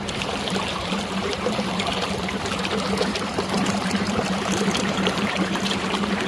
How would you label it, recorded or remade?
remade